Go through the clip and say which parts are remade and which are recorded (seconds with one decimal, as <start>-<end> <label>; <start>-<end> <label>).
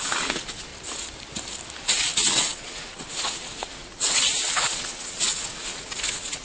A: 0.0-0.7 remade; 0.7-1.8 recorded; 1.8-6.4 remade